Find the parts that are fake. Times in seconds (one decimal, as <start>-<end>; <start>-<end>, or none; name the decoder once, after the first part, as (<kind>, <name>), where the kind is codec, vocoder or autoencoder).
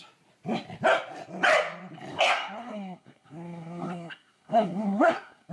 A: 2.1-5.5 (codec, SNAC)